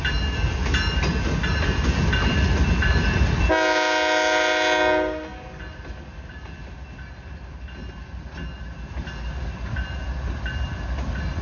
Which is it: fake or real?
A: real